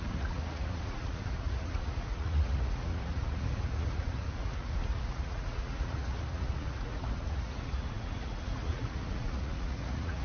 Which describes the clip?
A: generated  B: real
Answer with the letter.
A